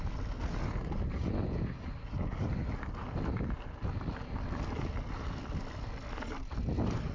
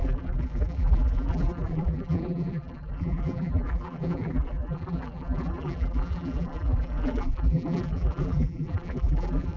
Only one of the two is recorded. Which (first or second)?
first